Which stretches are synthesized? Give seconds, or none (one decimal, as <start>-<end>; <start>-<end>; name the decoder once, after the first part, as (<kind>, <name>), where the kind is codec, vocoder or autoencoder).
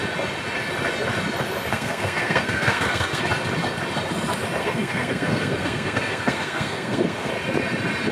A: 1.7-3.2 (codec, SNAC); 4.6-7.3